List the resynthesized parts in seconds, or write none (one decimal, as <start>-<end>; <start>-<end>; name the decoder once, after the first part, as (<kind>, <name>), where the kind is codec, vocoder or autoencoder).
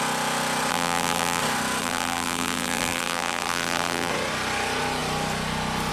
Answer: 0.7-1.4 (vocoder, BigVGAN v2); 1.8-4.1